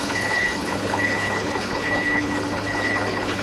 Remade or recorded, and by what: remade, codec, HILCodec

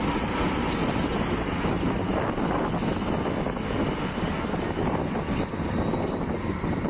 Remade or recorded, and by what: recorded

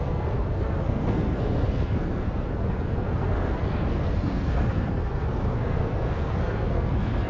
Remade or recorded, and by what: remade, codec, SNAC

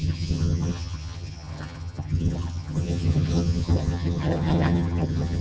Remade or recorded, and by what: remade, vocoder, HiFi-GAN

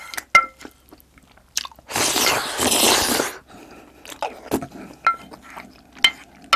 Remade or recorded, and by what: recorded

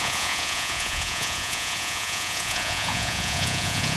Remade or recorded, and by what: remade, vocoder, Vocos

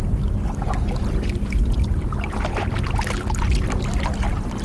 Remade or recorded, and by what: recorded